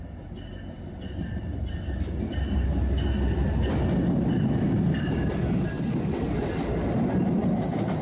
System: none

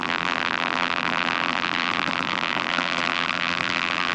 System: vocoder, BigVGAN v2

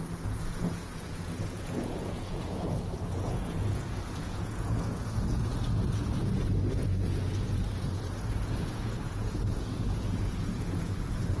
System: vocoder, Vocos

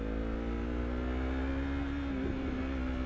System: none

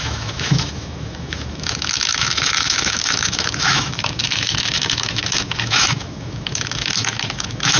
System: autoencoder, DAC-VAE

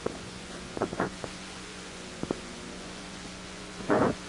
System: vocoder, Vocos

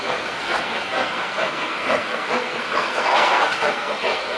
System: codec, SNAC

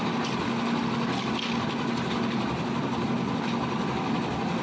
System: none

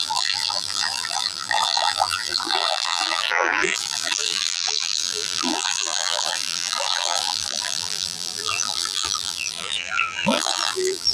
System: vocoder, BigVGAN v2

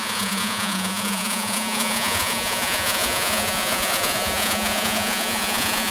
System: vocoder, Vocos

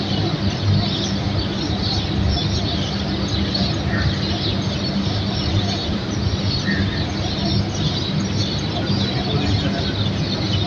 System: none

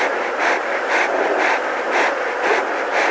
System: none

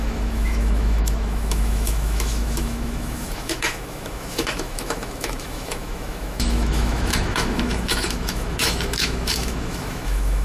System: autoencoder, DAC-VAE